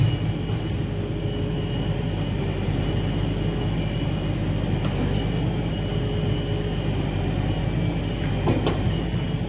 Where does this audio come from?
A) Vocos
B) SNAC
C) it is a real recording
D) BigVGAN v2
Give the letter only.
C